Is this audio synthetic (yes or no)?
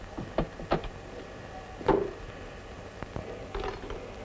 no